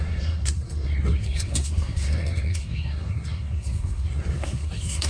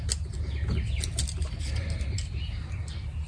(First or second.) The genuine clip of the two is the second